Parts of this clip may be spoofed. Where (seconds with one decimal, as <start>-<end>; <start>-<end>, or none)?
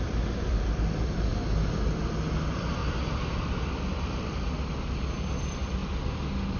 0.0-1.3; 2.3-2.8; 5.3-5.8